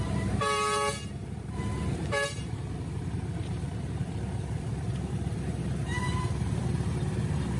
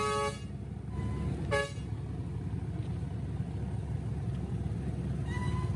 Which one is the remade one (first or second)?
first